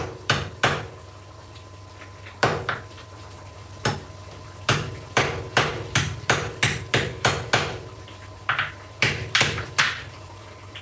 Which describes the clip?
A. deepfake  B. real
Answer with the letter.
A